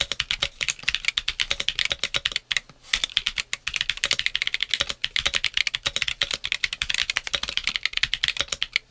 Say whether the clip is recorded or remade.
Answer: recorded